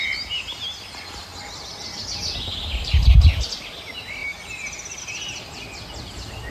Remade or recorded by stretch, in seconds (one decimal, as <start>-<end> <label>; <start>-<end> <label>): 0.0-6.5 recorded